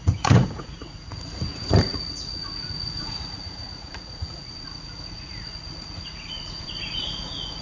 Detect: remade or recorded remade